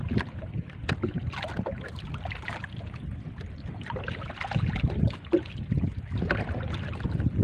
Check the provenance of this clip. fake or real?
real